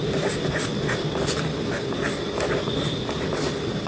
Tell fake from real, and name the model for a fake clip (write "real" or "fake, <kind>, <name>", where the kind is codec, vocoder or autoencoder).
real